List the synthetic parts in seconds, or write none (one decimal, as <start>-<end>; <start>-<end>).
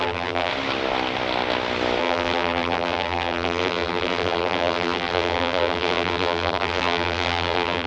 0.0-0.5; 2.0-7.9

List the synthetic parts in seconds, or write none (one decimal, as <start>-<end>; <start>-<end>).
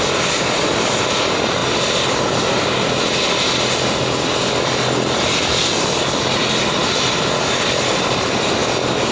8.6-9.1